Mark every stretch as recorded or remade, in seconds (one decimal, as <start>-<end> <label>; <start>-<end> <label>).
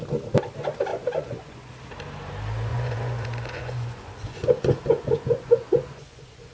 0.0-0.9 recorded; 0.9-1.7 remade; 1.7-2.7 recorded; 2.7-6.5 remade